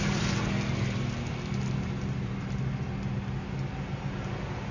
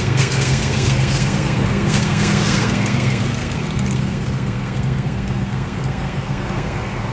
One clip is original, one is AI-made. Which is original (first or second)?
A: first